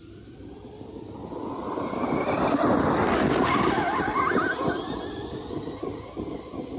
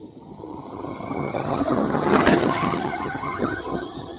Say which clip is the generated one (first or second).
second